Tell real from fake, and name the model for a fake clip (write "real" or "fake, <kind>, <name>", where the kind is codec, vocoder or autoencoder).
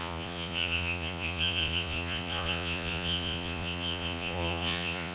fake, vocoder, Vocos